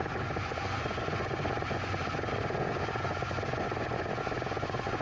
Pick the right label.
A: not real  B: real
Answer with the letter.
A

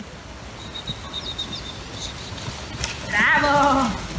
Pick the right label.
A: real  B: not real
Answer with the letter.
A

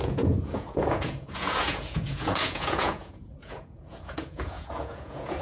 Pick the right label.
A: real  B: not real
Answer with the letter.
B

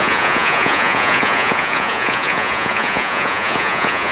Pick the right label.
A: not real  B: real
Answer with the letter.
A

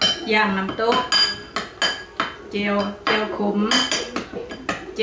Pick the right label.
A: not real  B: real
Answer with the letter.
B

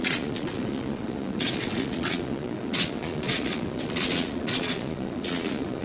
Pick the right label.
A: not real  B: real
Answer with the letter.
A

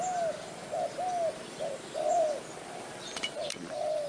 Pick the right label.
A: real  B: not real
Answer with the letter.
A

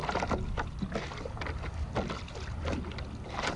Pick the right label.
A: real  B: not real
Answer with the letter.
A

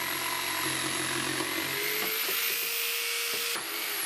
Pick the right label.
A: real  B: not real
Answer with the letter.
A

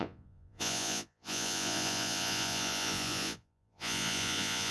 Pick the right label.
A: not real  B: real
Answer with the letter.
A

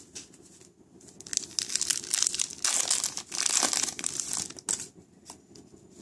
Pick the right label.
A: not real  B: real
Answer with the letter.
B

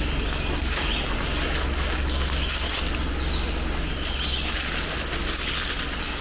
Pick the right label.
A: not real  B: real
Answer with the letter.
B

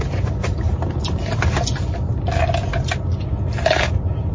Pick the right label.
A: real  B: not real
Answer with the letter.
A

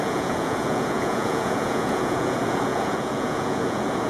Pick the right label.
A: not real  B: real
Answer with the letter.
A